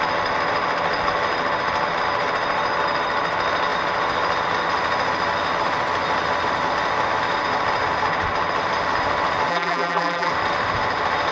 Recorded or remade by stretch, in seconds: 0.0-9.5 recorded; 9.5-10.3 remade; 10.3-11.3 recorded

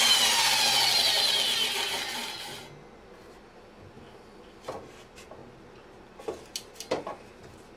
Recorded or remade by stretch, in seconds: 0.0-7.8 recorded

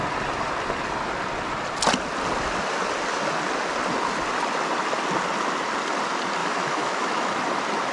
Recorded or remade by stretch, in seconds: 0.0-6.4 recorded; 6.4-7.3 remade; 7.3-7.9 recorded

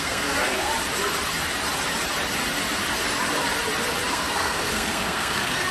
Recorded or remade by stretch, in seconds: 0.0-0.7 remade; 0.7-4.1 recorded; 4.1-5.7 remade

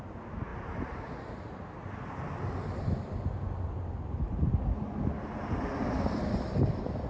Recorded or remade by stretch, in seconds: 0.0-7.1 recorded

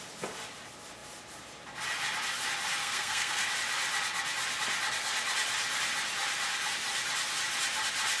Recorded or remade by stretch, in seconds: 0.0-2.8 recorded; 2.8-3.5 remade; 3.5-8.2 recorded